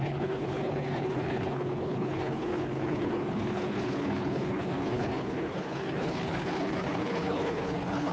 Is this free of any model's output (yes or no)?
no